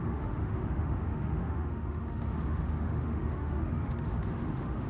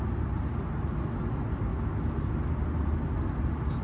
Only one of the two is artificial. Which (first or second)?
first